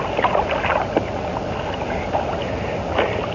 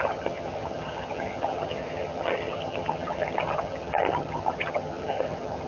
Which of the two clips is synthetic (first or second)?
second